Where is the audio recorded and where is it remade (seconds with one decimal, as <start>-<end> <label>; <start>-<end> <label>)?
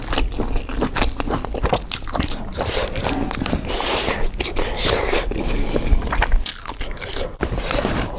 0.0-2.5 recorded; 2.5-3.0 remade; 3.0-8.2 recorded